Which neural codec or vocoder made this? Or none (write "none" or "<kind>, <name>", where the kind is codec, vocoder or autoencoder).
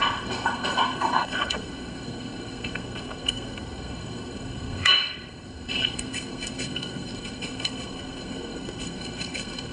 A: codec, SNAC